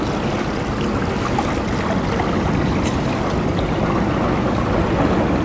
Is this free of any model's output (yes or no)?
yes